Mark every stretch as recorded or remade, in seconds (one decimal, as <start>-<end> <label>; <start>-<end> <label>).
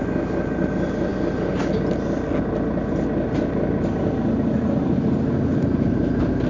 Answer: 0.0-6.5 recorded